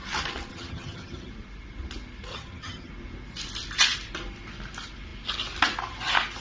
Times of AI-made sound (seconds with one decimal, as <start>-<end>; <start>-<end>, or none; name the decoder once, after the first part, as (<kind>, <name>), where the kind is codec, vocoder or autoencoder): 0.5-1.3 (vocoder, HiFi-GAN); 2.3-2.9